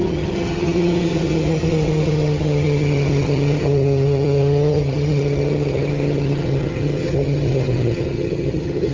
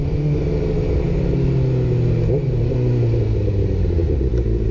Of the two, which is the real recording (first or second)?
second